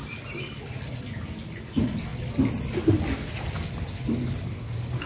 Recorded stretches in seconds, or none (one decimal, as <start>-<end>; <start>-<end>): 0.0-5.1